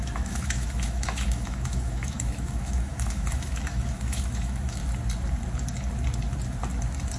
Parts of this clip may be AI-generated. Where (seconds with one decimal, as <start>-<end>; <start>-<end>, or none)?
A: 0.0-4.8